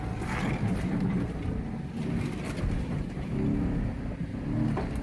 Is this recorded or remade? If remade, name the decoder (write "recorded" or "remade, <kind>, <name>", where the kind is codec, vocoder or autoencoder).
recorded